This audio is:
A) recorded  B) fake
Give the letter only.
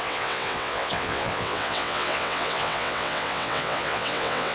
B